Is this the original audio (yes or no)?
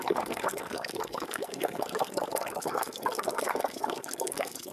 no